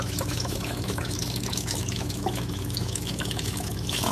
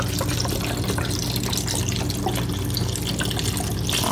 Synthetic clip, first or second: first